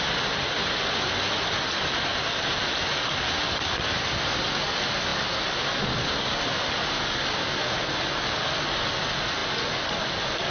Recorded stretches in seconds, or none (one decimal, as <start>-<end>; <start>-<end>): 0.0-10.5